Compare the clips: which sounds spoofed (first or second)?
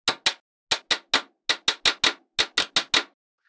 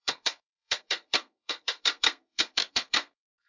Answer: second